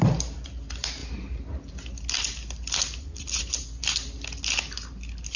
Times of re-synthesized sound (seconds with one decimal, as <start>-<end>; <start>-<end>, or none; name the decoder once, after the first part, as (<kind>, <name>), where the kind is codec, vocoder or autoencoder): none